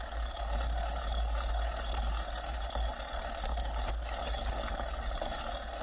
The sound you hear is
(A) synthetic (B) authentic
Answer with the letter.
B